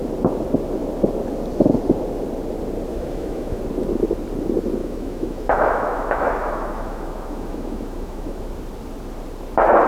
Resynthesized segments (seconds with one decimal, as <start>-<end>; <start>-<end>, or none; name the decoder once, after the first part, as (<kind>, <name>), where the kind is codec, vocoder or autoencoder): 2.9-3.6 (autoencoder, DAC-VAE); 4.8-8.4